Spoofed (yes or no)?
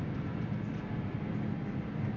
no